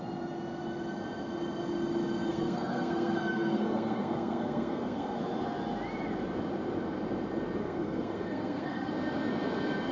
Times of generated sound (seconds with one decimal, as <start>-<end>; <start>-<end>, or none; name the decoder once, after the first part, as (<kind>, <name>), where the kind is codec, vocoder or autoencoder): 2.3-5.2 (codec, SNAC); 7.6-8.9